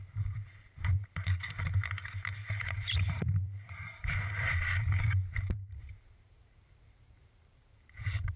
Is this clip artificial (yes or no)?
yes